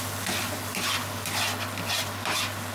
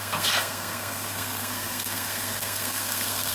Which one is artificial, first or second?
second